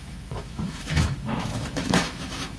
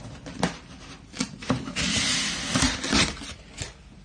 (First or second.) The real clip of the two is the second